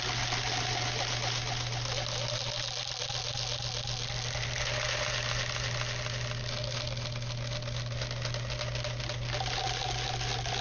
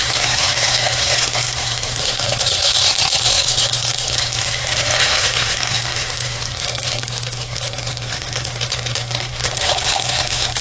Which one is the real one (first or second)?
first